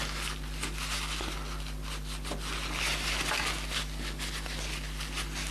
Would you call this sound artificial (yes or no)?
no